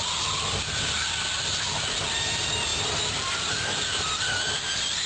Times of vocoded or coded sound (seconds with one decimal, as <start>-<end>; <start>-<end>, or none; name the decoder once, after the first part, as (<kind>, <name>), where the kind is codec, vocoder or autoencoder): none